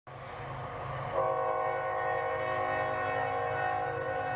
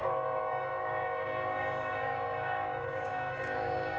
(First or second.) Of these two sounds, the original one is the first